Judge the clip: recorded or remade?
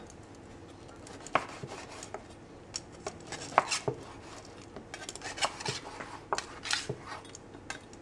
recorded